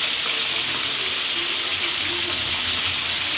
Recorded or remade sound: recorded